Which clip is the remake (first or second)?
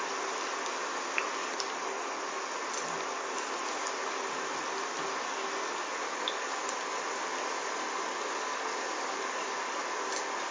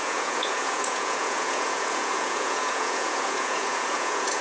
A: second